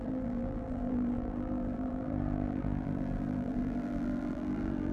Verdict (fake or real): fake